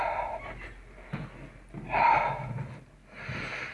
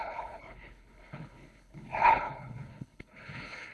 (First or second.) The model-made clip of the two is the second